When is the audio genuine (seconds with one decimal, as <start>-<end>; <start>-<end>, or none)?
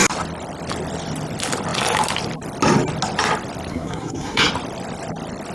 0.0-3.7; 4.5-5.5